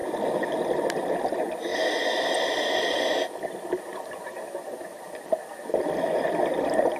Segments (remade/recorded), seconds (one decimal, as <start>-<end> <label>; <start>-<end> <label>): 0.0-7.0 recorded